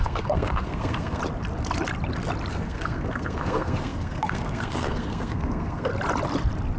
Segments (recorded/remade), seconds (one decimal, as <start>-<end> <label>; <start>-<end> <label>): 0.0-1.2 remade; 1.2-2.5 recorded; 2.5-5.9 remade; 5.9-6.8 recorded

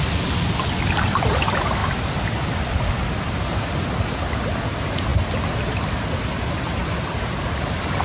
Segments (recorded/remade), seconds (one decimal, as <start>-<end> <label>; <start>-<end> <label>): 0.0-8.0 recorded

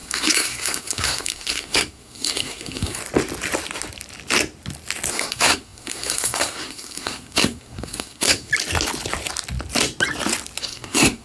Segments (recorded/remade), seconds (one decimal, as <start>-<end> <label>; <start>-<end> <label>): 0.0-3.0 remade; 3.0-5.1 recorded; 5.1-8.5 remade; 8.5-10.6 recorded; 10.6-11.2 remade

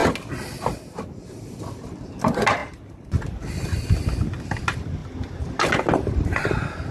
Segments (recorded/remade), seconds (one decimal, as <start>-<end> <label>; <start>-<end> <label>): 0.0-6.9 recorded